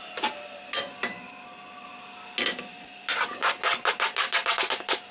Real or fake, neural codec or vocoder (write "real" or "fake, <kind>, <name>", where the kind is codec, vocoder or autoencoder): real